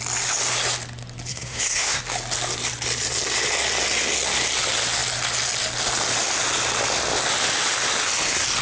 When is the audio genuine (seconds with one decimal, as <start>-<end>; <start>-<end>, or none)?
0.0-1.3; 2.0-8.6